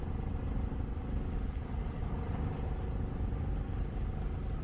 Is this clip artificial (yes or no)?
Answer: no